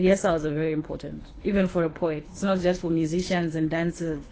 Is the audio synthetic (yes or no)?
yes